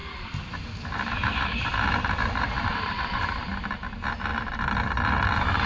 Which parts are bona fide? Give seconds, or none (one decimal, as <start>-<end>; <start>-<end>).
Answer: 3.4-5.7